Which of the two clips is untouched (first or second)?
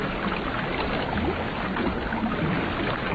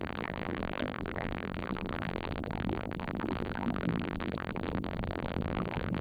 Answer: first